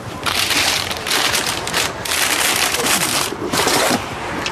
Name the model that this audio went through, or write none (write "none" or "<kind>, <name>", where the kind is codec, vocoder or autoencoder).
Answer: vocoder, BigVGAN v2